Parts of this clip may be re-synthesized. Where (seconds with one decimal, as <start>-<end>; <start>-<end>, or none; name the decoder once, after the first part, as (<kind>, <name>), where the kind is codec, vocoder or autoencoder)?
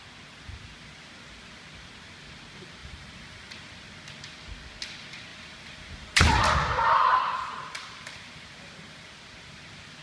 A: 2.8-3.7 (vocoder, BigVGAN v2); 5.3-9.2